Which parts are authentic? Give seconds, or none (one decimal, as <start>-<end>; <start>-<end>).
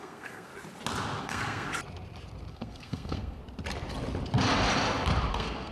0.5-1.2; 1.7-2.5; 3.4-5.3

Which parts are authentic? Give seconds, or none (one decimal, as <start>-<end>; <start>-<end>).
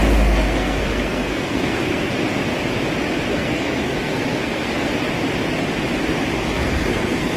2.1-3.3; 4.9-6.3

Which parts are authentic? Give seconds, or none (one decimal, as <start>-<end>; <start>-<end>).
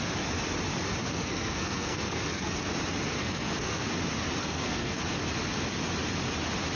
0.0-1.0; 2.7-3.2; 3.9-4.4; 5.0-6.8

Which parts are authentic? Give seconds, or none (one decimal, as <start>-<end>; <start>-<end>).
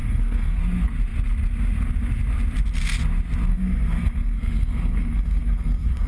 0.6-3.5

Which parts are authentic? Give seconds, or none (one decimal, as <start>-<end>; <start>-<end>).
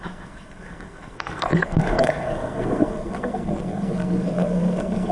none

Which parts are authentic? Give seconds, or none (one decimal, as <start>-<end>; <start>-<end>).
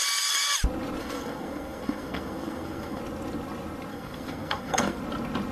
0.0-1.0; 3.0-3.9; 5.0-5.5